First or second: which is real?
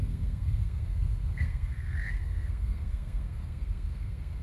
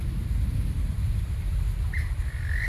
second